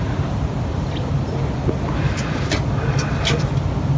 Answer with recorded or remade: recorded